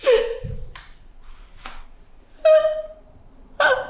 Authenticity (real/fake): real